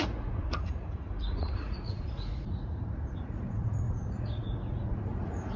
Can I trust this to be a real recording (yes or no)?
no